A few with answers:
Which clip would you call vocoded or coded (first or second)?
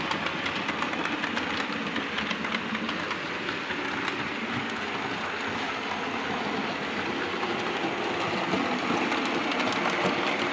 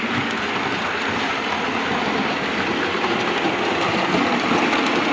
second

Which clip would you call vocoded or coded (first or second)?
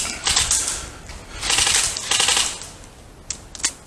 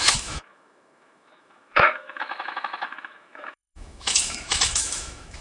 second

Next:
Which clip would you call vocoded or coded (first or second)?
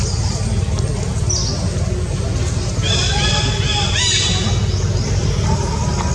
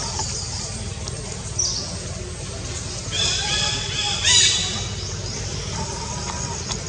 second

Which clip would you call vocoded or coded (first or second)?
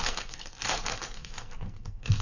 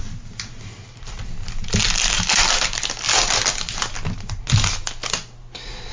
first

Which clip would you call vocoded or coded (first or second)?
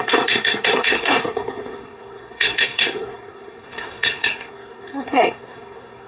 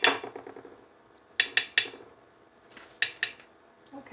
first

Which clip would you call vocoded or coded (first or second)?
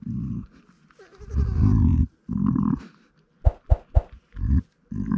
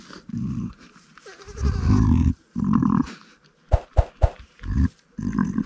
second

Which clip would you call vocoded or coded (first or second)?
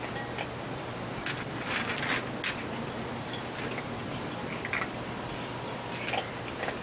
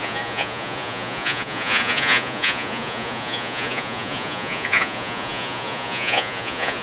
second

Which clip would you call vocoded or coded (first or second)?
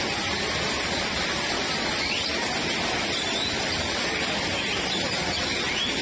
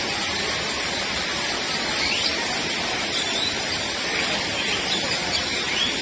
second